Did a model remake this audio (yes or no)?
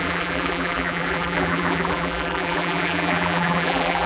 yes